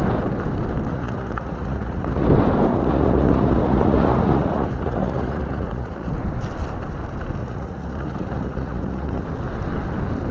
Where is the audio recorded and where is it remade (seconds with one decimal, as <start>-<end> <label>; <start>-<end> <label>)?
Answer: 0.0-0.9 recorded; 0.9-2.3 remade; 2.3-2.7 recorded; 2.7-6.1 remade; 6.1-7.4 recorded; 7.4-9.2 remade; 9.2-10.3 recorded